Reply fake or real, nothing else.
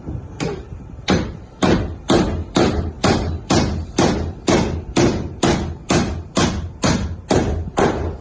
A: real